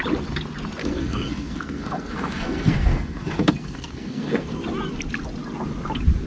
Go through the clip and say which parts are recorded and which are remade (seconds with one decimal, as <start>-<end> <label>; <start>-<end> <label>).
0.0-0.8 recorded; 0.8-4.6 remade; 4.6-6.3 recorded